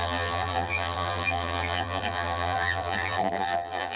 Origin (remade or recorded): remade